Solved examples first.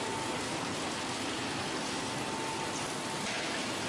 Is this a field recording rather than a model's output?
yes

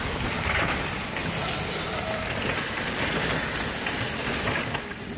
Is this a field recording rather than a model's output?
yes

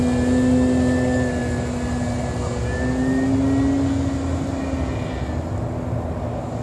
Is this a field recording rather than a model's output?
yes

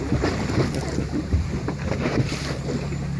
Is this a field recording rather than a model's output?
yes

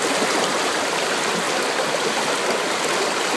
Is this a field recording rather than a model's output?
yes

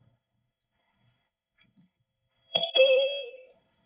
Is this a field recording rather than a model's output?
no